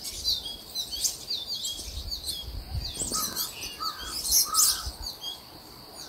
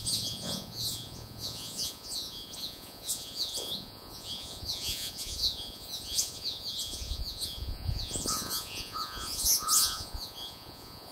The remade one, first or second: second